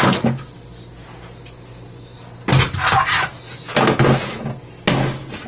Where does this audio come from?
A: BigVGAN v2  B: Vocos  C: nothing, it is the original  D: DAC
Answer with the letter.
C